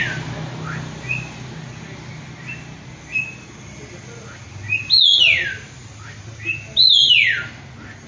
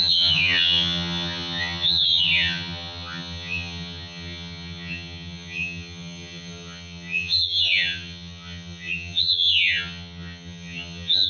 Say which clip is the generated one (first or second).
second